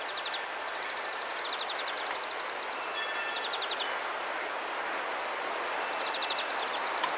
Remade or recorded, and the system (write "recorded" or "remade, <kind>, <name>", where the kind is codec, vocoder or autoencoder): recorded